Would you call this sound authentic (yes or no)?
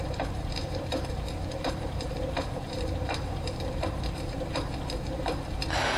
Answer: no